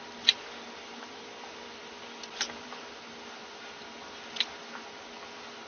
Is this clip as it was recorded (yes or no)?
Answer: yes